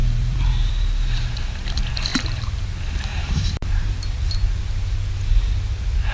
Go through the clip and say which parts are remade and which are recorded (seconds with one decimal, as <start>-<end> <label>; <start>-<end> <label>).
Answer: 0.0-0.7 remade; 0.7-2.1 recorded; 2.1-2.7 remade; 2.7-3.1 recorded; 3.1-4.3 remade; 4.3-6.1 recorded